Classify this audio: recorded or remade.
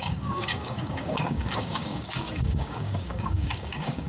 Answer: remade